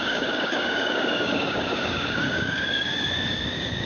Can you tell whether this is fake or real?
fake